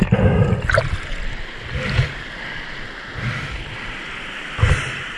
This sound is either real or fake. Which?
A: real